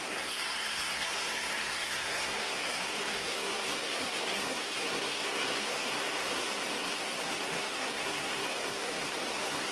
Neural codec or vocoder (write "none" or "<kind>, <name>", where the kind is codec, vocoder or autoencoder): codec, SNAC